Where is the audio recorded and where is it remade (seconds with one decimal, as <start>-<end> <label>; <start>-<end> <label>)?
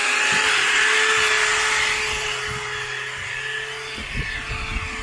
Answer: 0.0-5.0 recorded